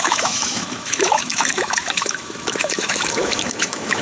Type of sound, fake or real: fake